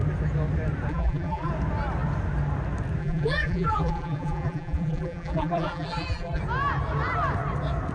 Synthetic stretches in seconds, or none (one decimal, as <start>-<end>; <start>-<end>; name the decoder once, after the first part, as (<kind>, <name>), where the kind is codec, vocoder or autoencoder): 0.9-1.5 (vocoder, BigVGAN v2); 3.0-6.4